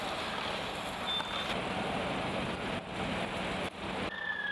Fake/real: real